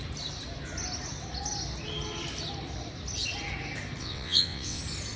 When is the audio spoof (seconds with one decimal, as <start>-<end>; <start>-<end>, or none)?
4.0-4.8